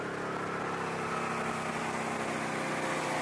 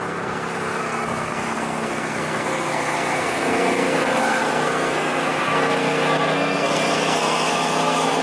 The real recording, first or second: first